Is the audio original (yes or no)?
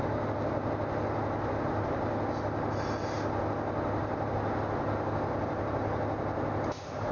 yes